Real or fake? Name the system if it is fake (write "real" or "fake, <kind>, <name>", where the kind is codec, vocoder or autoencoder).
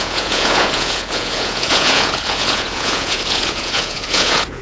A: fake, vocoder, Vocos